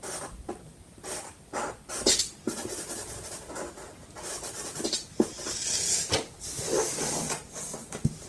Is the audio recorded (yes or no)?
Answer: yes